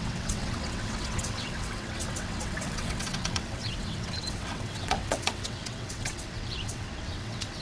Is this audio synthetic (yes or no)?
yes